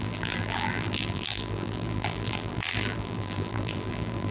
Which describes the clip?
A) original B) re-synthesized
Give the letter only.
B